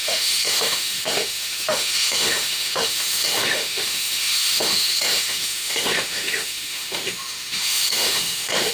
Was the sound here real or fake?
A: fake